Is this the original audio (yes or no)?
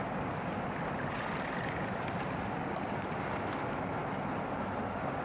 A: yes